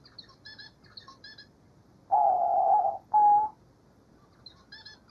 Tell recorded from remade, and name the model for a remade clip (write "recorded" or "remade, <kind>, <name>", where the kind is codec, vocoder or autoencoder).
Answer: recorded